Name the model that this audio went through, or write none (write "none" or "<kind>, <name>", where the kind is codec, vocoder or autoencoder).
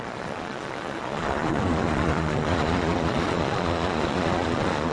vocoder, Vocos